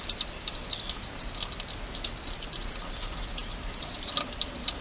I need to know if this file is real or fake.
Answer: real